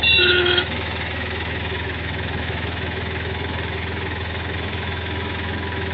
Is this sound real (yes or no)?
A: no